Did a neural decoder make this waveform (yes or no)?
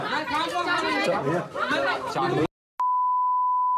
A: no